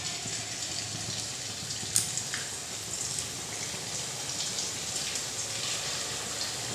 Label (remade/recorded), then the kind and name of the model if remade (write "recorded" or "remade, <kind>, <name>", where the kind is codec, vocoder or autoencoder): recorded